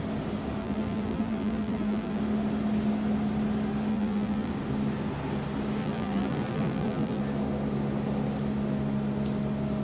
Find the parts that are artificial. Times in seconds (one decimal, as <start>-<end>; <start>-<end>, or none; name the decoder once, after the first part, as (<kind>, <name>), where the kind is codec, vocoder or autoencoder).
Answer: 0.6-2.2 (vocoder, BigVGAN v2); 3.9-4.5; 5.8-7.2